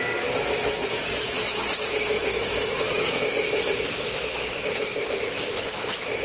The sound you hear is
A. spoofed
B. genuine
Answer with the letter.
A